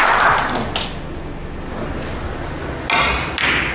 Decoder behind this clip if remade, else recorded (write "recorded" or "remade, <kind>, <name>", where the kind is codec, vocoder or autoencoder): recorded